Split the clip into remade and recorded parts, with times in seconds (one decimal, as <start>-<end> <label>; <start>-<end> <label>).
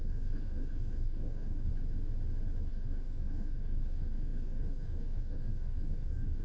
0.0-1.7 remade; 1.7-2.7 recorded; 2.7-6.4 remade